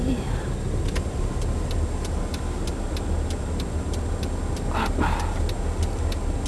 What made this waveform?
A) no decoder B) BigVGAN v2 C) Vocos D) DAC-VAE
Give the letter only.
A